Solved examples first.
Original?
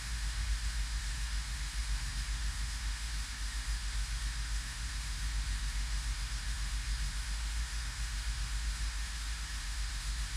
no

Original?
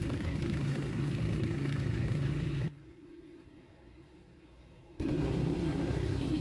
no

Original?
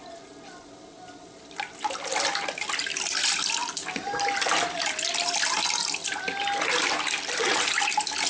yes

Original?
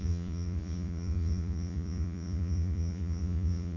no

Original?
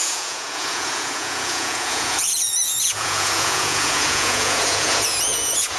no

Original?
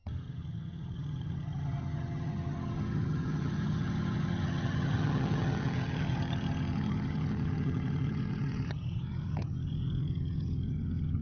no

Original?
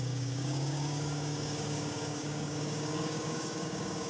no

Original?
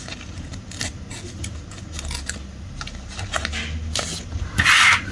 yes